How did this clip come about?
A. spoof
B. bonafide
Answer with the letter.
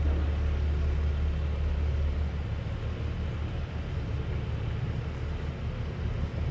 B